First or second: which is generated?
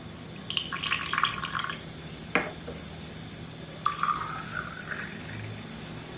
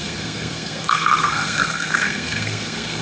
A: second